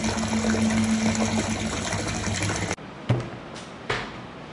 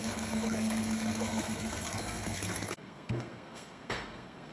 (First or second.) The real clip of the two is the first